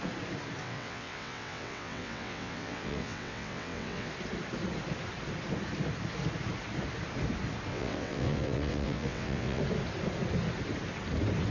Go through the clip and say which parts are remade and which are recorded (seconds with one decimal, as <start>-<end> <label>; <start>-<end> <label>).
0.0-0.6 recorded; 0.6-4.1 remade; 4.1-7.7 recorded; 7.7-9.6 remade; 9.6-11.5 recorded